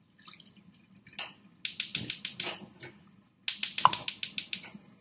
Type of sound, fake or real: real